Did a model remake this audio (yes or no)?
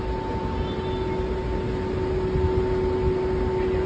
no